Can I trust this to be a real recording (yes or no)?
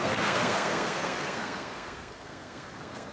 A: no